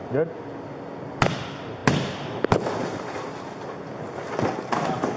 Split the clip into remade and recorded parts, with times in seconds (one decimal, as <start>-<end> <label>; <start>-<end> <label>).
0.0-5.2 recorded